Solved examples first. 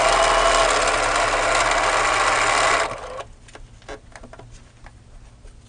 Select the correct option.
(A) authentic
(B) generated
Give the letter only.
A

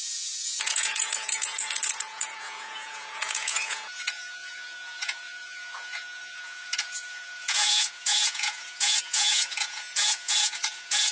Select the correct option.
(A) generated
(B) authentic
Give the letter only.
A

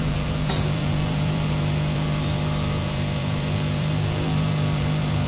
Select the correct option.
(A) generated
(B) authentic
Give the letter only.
A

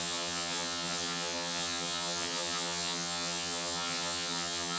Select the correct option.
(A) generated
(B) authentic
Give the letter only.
A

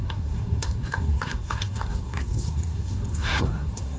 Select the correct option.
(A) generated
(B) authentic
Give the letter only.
A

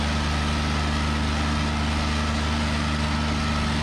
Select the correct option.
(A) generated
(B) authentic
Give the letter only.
B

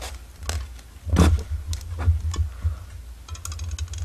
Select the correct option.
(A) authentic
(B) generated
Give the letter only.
A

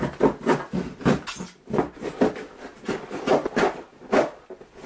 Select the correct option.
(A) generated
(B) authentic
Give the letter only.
B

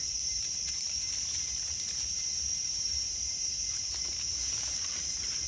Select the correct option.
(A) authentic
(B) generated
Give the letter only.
B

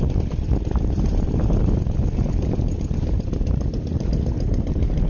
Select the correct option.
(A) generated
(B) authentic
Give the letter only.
B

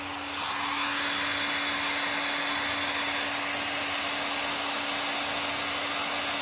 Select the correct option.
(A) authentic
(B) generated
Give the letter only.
A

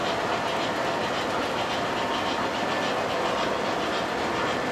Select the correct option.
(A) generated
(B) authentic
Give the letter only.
B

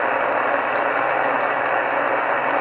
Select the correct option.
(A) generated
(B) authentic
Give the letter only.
B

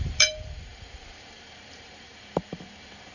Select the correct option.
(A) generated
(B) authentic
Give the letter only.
A